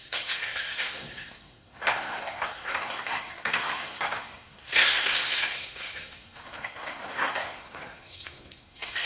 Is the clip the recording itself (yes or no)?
no